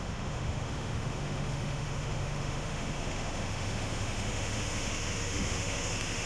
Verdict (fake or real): fake